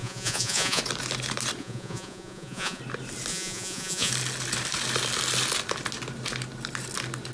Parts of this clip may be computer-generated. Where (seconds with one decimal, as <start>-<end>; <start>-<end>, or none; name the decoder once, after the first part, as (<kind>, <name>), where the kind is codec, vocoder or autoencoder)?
0.0-0.8 (vocoder, Vocos); 1.6-2.8; 3.3-4.1